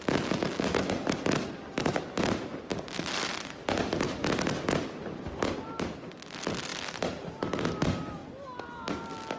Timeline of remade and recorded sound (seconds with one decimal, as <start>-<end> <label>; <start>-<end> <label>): 0.0-9.4 recorded